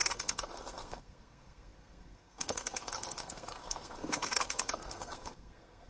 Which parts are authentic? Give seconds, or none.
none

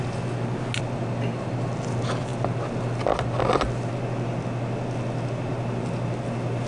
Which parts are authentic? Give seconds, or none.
0.0-6.7

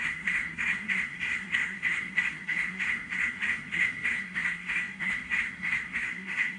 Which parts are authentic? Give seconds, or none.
none

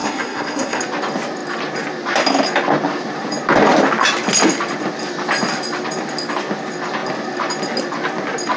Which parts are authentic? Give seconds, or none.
0.8-8.6

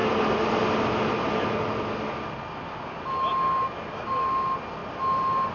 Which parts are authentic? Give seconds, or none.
0.0-5.5

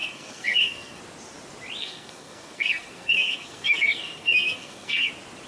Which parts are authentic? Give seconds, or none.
1.0-1.8; 5.1-5.5